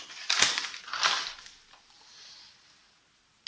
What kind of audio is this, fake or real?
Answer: real